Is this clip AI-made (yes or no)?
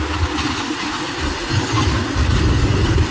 no